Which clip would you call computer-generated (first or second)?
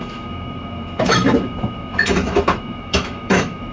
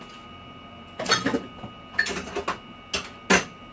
first